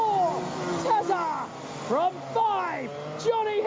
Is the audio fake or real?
real